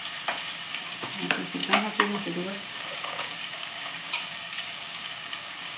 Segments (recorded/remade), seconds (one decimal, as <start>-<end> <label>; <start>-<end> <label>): 0.0-0.7 recorded; 0.7-5.8 remade